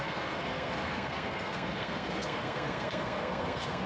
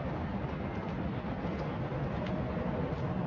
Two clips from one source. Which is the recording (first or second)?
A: second